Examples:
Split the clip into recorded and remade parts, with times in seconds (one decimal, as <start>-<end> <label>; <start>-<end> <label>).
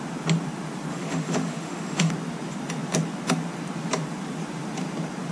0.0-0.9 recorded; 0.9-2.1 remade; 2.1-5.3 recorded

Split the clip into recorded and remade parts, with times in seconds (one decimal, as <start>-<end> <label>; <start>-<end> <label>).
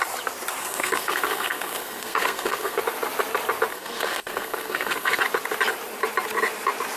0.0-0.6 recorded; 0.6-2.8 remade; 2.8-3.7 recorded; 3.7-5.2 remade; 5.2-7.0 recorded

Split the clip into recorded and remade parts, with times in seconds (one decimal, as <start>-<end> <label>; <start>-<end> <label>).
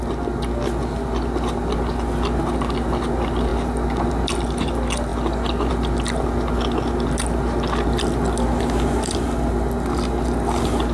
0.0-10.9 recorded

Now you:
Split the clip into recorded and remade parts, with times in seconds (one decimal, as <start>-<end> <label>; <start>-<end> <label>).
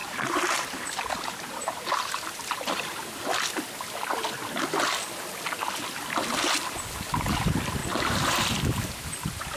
0.0-3.2 remade; 3.2-9.6 recorded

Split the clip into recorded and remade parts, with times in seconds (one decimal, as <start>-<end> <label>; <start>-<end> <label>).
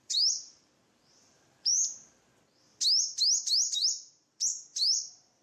0.0-2.3 remade; 2.3-3.4 recorded; 3.4-5.4 remade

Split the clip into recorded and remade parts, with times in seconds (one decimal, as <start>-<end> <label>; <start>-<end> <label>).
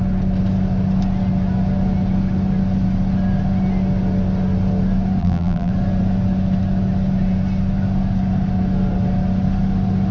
0.0-5.2 recorded; 5.2-5.7 remade; 5.7-10.1 recorded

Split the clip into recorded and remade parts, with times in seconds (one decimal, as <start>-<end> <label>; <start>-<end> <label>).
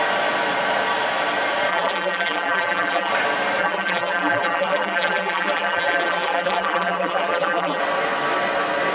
0.0-1.7 recorded; 1.7-3.1 remade; 3.1-3.6 recorded; 3.6-7.8 remade; 7.8-8.9 recorded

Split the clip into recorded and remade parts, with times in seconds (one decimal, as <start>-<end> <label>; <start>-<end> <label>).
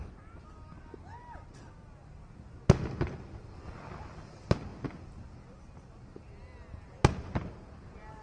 0.0-8.2 recorded